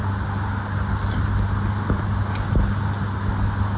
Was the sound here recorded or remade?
recorded